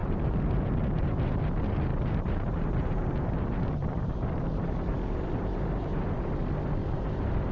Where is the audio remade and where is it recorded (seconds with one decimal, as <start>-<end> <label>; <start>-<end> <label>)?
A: 0.0-1.4 remade; 1.4-1.9 recorded; 1.9-6.3 remade; 6.3-6.8 recorded; 6.8-7.5 remade